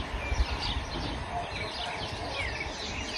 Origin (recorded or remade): recorded